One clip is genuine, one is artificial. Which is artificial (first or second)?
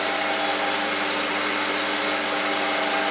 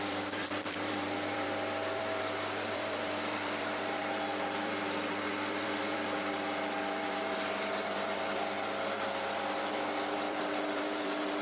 second